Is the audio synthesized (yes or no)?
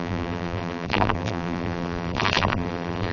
yes